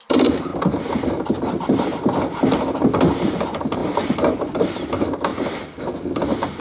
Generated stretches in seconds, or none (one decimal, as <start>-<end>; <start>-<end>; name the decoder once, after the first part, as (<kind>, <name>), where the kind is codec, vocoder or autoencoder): 0.0-6.6 (vocoder, BigVGAN v2)